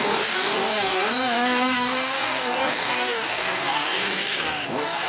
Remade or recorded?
remade